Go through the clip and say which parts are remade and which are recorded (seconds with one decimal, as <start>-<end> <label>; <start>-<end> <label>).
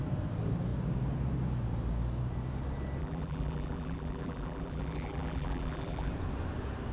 0.0-3.0 recorded; 3.0-6.1 remade; 6.1-6.9 recorded